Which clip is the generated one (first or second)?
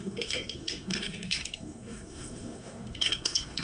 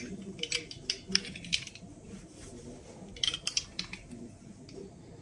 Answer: first